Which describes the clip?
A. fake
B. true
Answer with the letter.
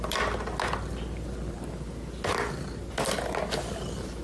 B